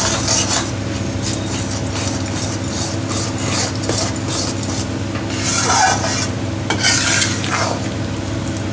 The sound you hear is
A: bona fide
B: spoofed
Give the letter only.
A